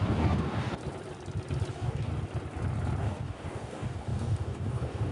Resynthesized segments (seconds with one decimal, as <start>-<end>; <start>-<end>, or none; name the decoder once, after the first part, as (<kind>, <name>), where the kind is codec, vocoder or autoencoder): 0.0-0.8 (codec, DAC); 1.7-2.1; 3.0-5.1